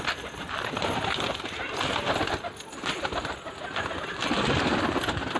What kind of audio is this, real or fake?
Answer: real